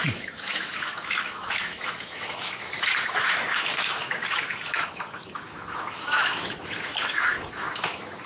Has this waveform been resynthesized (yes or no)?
yes